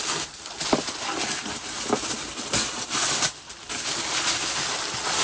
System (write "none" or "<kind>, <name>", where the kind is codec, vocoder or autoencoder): none